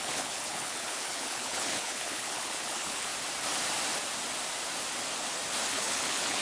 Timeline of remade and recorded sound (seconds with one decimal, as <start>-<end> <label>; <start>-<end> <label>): 0.0-3.1 remade; 3.1-5.7 recorded; 5.7-6.4 remade